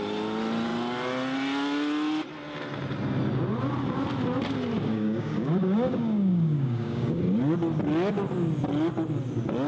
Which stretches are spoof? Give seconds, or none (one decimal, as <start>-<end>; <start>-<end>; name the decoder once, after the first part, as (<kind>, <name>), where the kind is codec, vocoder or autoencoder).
4.9-7.2 (codec, DAC)